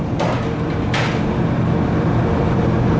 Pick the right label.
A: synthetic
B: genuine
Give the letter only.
A